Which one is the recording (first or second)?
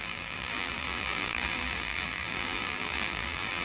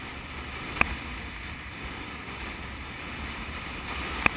second